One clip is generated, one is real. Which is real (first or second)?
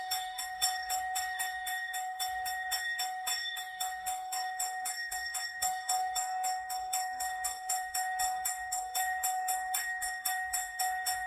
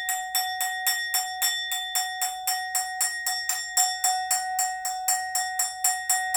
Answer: second